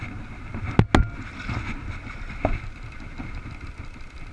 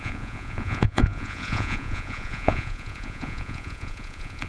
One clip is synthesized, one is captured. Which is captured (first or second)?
first